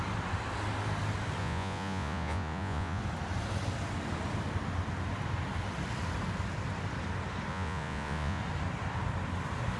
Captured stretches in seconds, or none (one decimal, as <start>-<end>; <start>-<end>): 0.0-1.4; 3.0-7.5; 8.4-9.8